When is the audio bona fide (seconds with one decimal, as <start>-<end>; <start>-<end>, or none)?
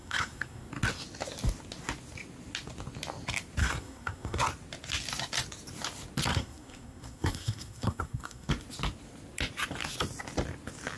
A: 0.7-3.6; 4.4-6.3; 8.5-11.0